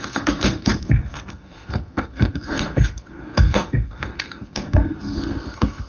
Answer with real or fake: fake